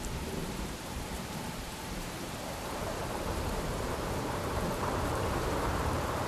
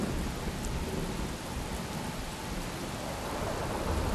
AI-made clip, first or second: first